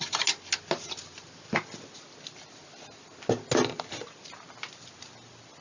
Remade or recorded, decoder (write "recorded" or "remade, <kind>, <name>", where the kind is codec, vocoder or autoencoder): recorded